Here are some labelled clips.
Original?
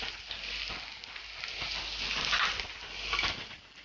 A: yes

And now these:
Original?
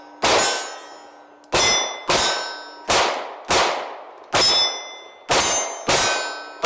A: yes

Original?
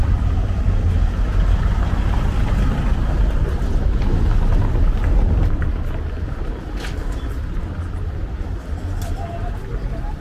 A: yes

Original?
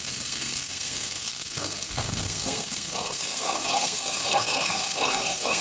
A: no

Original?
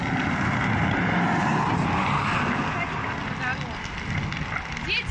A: yes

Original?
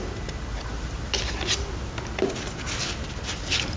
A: yes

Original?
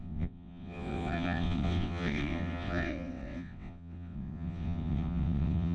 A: no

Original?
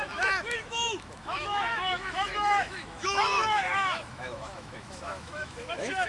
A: no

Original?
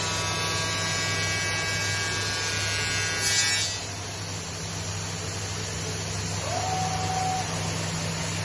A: yes